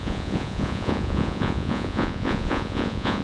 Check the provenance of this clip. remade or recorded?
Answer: remade